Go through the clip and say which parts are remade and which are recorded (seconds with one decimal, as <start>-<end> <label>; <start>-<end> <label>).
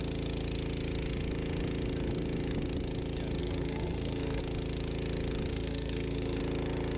0.0-3.4 recorded; 3.4-4.4 remade; 4.4-5.5 recorded; 5.5-6.4 remade; 6.4-7.0 recorded